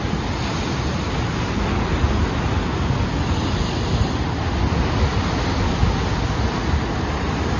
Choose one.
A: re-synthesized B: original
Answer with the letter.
B